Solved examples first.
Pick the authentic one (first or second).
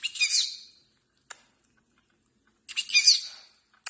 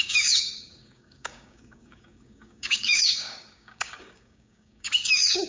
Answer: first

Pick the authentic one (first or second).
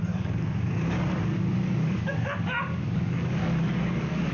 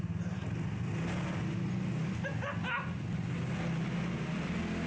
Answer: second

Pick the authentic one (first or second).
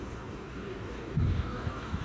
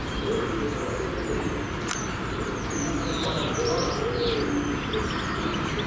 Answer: second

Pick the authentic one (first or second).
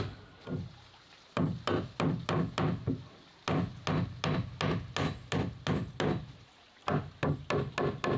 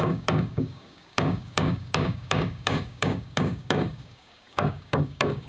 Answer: first